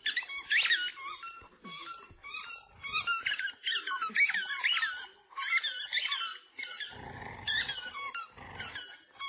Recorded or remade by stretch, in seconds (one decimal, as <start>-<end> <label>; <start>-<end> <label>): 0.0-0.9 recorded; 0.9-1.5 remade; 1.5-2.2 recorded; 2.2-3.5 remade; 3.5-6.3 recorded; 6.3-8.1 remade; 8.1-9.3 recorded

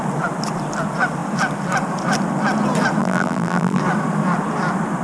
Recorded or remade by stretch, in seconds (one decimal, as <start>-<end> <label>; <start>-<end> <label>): 0.0-3.0 recorded; 3.0-3.8 remade; 3.8-5.0 recorded

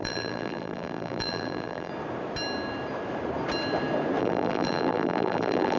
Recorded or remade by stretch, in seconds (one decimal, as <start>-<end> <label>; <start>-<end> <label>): 0.0-1.9 remade; 1.9-4.2 recorded; 4.2-5.8 remade

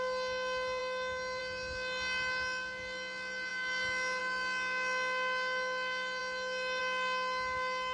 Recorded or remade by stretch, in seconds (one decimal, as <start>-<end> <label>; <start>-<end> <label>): 0.0-7.9 recorded